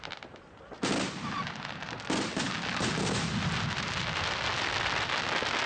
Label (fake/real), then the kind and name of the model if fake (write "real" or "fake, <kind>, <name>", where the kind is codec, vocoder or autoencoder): real